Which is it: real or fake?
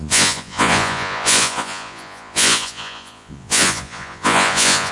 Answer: fake